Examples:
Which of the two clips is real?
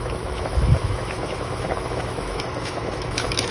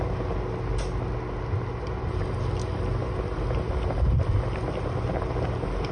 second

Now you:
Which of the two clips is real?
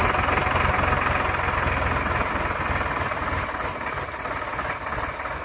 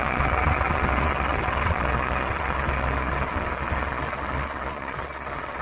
first